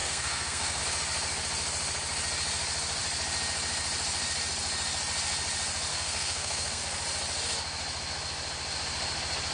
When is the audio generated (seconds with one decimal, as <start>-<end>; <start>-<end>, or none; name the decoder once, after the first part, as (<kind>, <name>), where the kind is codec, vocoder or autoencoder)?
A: 0.0-0.8 (codec, SNAC); 5.9-6.8